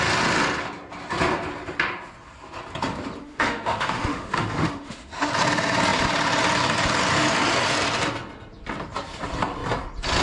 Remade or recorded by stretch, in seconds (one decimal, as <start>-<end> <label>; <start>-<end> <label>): 0.0-3.2 recorded; 3.2-5.3 remade; 5.3-10.2 recorded